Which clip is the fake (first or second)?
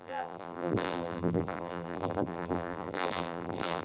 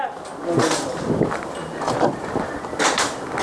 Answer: first